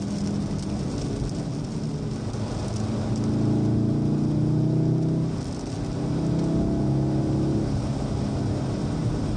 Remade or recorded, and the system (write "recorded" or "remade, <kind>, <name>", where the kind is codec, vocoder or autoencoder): recorded